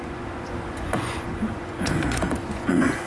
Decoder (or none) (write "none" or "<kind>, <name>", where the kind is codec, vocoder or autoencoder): vocoder, Vocos